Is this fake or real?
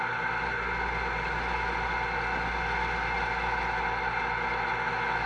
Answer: real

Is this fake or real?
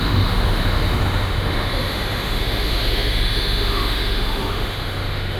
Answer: fake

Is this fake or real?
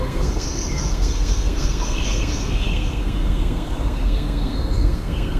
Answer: fake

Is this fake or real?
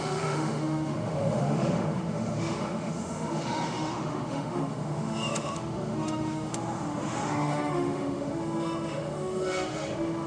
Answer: fake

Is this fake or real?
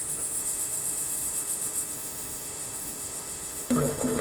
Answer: fake